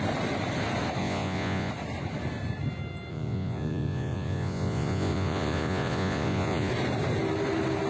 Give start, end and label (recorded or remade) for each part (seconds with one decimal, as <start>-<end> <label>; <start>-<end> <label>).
0.0-1.0 recorded; 1.0-1.7 remade; 1.7-3.1 recorded; 3.1-6.7 remade; 6.7-7.9 recorded